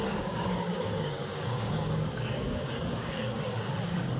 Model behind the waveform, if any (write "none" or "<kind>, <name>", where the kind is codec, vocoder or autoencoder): codec, DAC